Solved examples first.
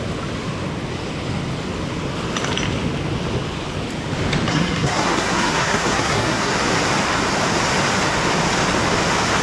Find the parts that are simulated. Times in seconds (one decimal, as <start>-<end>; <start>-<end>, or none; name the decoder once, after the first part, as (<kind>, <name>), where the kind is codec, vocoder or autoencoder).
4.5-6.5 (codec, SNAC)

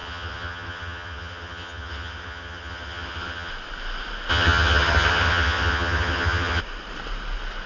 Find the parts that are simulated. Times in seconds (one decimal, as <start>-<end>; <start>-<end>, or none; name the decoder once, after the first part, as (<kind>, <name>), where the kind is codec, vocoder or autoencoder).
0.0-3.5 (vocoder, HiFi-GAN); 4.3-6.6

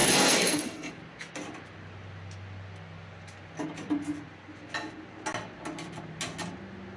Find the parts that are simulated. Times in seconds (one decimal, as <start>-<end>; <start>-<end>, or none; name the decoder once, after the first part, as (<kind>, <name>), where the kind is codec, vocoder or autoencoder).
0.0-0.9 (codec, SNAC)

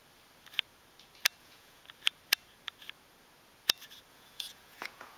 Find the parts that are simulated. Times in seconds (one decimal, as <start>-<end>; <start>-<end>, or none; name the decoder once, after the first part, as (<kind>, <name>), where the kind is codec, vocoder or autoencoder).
1.4-1.8 (vocoder, Vocos); 4.1-5.2